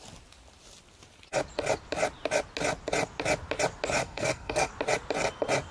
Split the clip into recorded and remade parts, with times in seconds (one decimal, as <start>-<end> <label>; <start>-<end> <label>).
0.0-4.0 recorded; 4.0-4.7 remade; 4.7-5.7 recorded